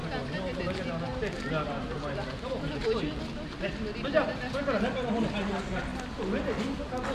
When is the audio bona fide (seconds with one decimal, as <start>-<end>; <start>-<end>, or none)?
0.0-7.1